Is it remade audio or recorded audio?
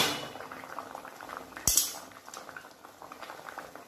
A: recorded